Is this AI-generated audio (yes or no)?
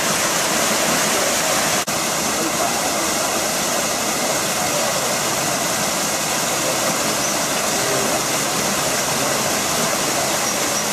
no